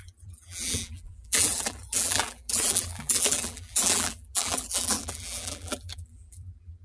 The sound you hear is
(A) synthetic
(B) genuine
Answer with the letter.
A